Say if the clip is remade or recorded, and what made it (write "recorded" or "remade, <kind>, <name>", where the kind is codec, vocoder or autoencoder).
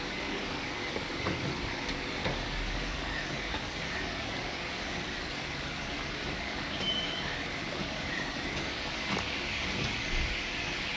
remade, codec, DAC